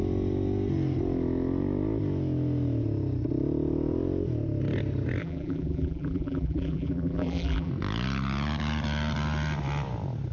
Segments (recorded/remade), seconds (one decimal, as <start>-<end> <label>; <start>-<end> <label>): 0.0-5.2 recorded; 5.2-7.7 remade; 7.7-10.3 recorded